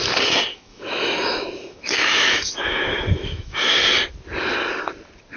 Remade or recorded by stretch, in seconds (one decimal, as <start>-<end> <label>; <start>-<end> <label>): 0.0-0.5 recorded; 0.5-3.7 remade; 3.7-5.4 recorded